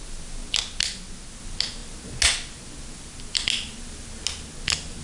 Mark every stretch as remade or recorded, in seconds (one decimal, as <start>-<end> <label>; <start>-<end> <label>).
0.0-5.0 recorded